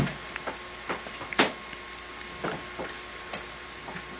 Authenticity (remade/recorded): recorded